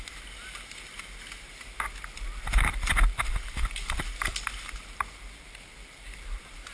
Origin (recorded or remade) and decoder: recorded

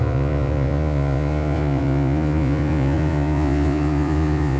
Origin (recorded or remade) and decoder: remade, vocoder, Vocos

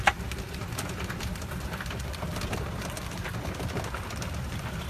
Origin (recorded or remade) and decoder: remade, vocoder, BigVGAN v2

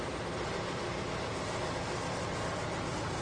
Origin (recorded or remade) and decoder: recorded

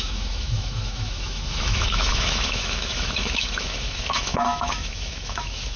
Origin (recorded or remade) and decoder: remade, autoencoder, DAC-VAE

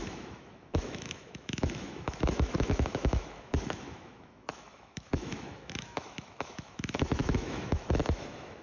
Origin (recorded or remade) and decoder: remade, autoencoder, DAC-VAE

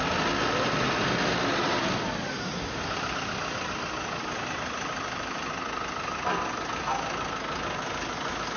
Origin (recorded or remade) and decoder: recorded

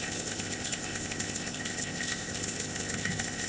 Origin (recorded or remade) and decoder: remade, codec, ZipCodec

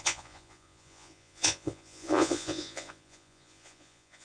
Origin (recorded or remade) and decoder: remade, vocoder, Vocos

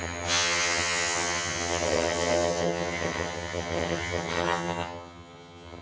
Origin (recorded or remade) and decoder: remade, vocoder, HiFi-GAN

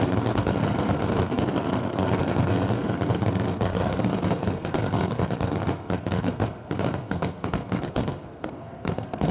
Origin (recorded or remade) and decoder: remade, codec, SNAC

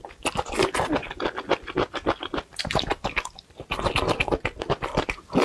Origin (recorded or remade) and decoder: recorded